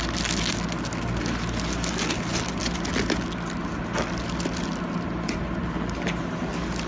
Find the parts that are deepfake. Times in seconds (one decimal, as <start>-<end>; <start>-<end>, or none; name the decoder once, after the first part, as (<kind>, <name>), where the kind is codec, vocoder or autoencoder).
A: none